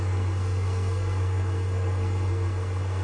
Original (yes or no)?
no